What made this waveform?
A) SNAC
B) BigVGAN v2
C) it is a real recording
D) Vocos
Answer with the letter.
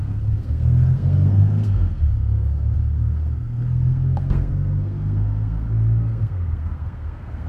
A